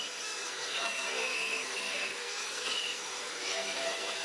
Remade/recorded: remade